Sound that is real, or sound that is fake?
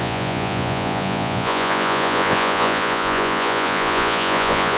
fake